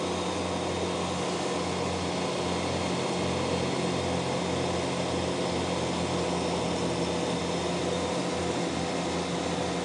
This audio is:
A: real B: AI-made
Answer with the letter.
A